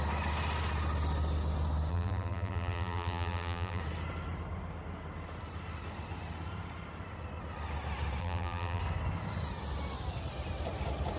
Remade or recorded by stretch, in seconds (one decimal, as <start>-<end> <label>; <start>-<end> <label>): 0.0-1.9 recorded; 1.9-3.8 remade; 3.8-8.2 recorded; 8.2-8.8 remade; 8.8-11.2 recorded